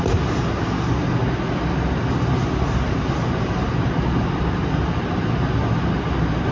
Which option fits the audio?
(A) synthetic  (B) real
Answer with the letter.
B